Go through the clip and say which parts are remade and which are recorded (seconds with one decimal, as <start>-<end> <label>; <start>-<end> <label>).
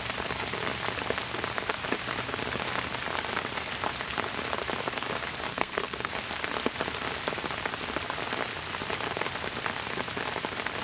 0.0-5.5 recorded; 5.5-6.1 remade; 6.1-10.8 recorded